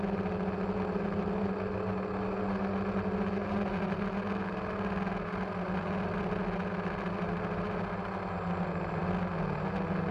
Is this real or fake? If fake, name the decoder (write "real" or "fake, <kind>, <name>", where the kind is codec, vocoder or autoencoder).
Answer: real